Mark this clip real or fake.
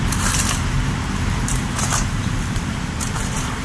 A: fake